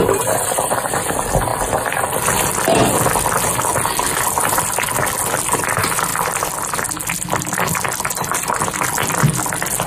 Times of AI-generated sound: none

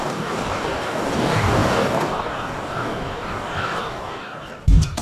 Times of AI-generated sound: 0.0-5.0 (codec, DAC)

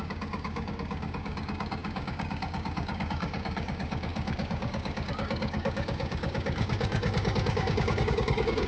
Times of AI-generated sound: 0.0-8.7 (codec, DAC)

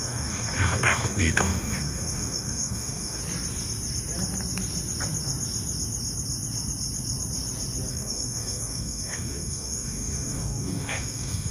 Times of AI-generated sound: 0.0-3.2 (codec, DAC); 7.9-11.5

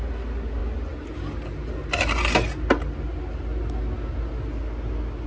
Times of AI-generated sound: none